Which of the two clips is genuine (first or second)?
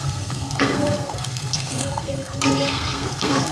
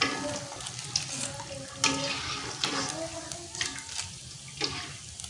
second